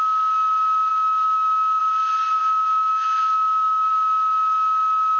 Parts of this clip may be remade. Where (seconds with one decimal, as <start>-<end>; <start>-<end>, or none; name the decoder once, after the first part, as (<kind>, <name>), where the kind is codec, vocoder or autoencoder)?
0.9-1.8 (autoencoder, DAC-VAE); 2.4-3.9